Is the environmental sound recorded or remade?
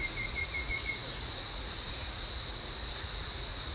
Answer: remade